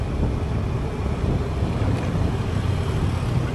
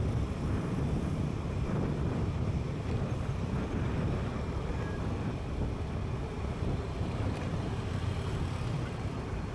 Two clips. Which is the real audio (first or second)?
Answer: first